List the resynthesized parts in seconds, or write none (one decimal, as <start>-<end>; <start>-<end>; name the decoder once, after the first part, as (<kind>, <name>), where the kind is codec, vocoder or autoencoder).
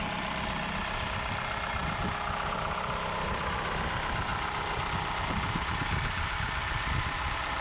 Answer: none